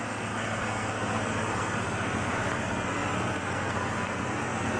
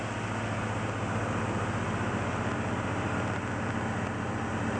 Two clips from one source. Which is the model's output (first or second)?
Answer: first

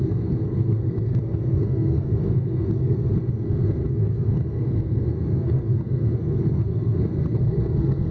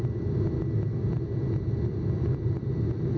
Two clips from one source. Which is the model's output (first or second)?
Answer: first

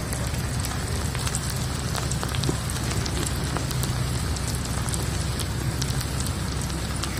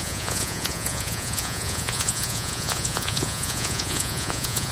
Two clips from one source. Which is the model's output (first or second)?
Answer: second